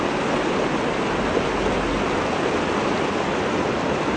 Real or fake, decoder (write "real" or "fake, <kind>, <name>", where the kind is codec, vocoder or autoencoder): real